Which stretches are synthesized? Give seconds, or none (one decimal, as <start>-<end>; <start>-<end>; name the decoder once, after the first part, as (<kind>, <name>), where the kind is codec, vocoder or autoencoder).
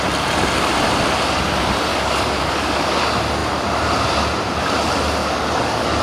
1.9-3.0 (codec, DAC); 5.2-6.0